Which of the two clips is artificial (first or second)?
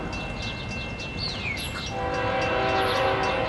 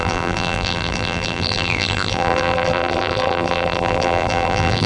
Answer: second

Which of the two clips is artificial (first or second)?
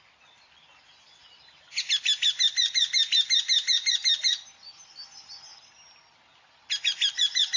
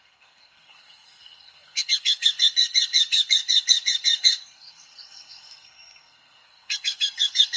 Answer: second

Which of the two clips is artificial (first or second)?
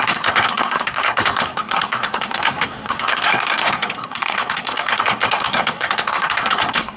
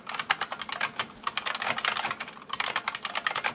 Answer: first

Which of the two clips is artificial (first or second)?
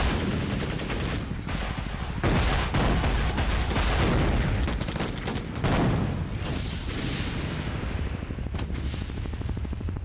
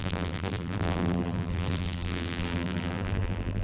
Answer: second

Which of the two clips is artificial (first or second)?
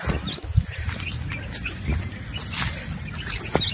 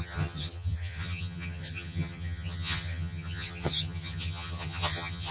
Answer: second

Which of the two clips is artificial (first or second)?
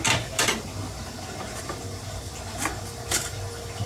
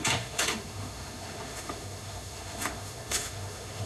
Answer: second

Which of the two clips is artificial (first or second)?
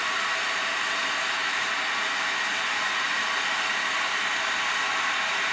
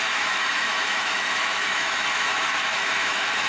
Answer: second